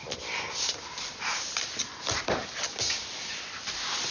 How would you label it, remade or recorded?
recorded